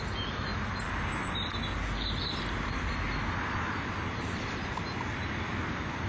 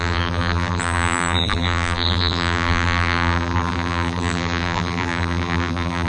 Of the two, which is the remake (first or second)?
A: second